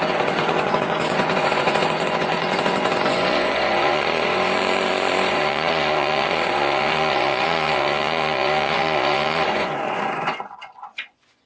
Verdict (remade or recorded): remade